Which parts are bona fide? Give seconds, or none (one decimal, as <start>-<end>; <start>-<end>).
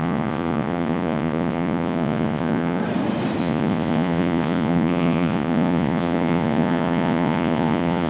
2.8-3.4